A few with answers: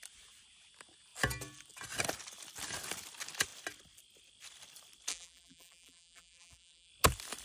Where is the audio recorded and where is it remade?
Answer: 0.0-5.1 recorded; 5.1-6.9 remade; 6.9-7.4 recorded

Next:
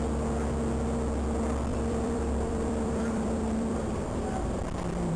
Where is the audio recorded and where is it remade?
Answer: 0.0-1.7 recorded; 1.7-4.6 remade; 4.6-5.2 recorded

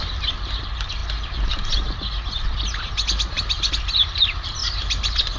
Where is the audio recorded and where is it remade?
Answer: 0.0-1.0 remade; 1.0-3.7 recorded; 3.7-5.4 remade

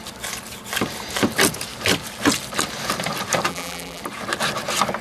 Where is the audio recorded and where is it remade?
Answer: 0.0-3.5 recorded; 3.5-4.0 remade; 4.0-5.0 recorded